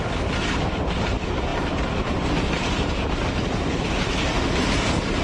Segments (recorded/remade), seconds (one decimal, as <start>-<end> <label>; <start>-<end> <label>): 0.0-5.2 recorded